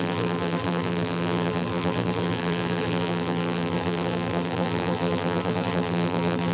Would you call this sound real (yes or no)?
no